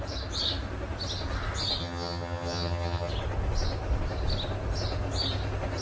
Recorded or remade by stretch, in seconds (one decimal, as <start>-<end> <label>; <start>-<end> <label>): 0.0-1.8 recorded; 1.8-3.1 remade; 3.1-5.8 recorded